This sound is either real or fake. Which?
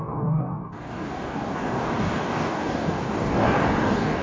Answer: fake